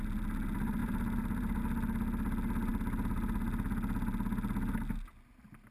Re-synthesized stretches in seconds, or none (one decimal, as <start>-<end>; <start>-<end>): 0.8-1.6